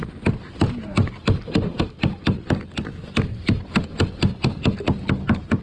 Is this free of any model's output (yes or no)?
yes